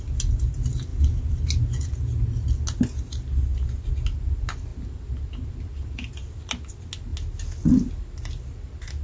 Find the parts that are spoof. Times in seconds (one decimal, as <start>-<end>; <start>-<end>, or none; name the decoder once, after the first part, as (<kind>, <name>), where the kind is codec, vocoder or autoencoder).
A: none